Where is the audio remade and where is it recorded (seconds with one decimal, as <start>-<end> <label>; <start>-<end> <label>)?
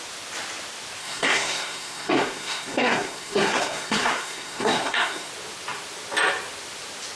0.0-1.0 recorded; 1.0-5.3 remade; 5.3-7.2 recorded